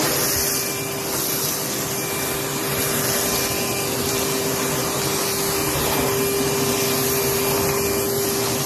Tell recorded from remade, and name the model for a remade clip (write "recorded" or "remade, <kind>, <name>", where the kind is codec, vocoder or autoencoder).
recorded